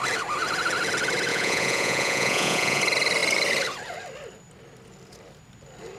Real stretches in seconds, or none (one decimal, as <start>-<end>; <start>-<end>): 0.0-1.3; 2.8-6.0